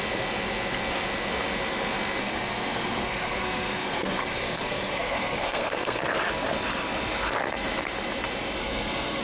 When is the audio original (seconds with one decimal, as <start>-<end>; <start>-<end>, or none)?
0.0-2.2; 6.0-8.6